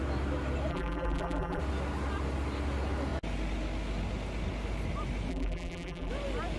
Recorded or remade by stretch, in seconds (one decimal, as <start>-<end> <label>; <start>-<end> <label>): 0.0-0.7 recorded; 0.7-1.6 remade; 1.6-5.3 recorded; 5.3-6.1 remade; 6.1-6.6 recorded